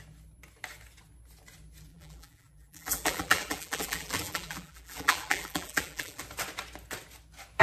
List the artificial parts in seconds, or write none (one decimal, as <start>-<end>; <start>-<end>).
1.9-6.2